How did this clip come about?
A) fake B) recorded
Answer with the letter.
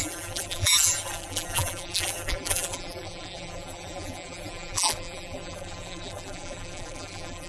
A